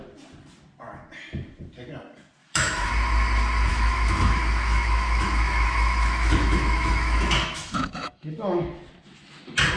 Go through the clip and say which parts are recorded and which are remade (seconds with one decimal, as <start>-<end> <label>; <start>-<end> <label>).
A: 0.0-2.4 recorded; 2.4-2.9 remade; 2.9-3.7 recorded; 3.7-8.8 remade; 8.8-9.8 recorded